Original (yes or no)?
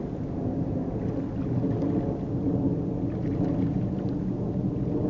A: yes